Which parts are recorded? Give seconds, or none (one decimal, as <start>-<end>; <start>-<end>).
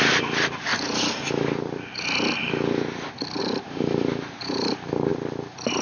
0.7-3.4; 5.1-5.8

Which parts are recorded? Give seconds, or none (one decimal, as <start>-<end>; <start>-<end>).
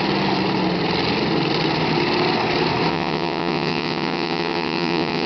0.0-2.9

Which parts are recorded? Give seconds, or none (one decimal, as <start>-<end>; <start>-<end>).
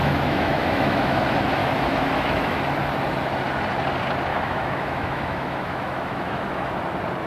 1.2-1.6; 2.6-4.3; 6.7-7.3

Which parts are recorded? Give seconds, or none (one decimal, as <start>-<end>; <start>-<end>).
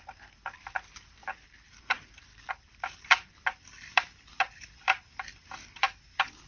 0.0-1.2; 1.8-2.3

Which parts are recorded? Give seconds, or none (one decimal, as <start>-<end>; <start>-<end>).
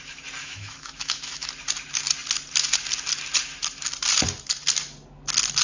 0.0-0.4; 1.5-5.6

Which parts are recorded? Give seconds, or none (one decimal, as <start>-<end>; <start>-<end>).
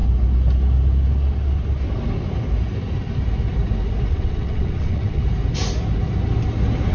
0.0-4.1; 5.2-6.9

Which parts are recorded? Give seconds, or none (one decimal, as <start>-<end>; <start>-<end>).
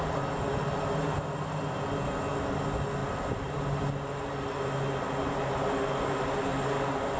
0.0-3.0; 3.8-7.2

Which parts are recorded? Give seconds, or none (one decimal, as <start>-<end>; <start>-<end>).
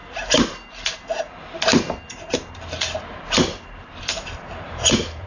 0.0-3.2